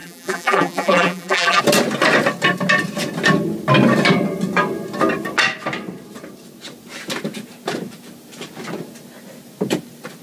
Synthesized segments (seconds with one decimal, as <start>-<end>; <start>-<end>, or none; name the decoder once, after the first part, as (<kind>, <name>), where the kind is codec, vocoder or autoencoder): 0.0-1.6 (vocoder, BigVGAN v2)